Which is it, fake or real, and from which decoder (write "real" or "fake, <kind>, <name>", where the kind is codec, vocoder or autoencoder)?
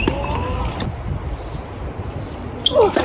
real